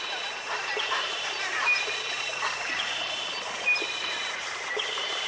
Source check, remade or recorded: remade